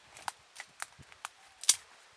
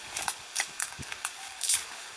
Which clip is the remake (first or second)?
second